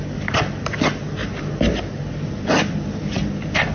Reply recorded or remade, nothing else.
recorded